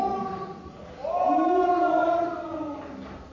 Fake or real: real